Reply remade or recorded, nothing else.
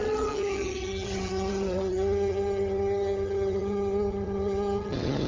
remade